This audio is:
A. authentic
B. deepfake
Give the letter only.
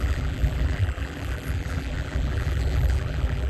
B